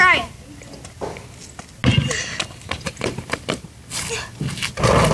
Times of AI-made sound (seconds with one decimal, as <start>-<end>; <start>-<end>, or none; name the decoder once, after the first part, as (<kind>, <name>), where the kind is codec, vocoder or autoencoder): none